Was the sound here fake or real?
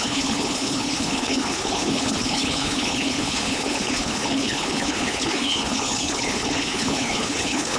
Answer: fake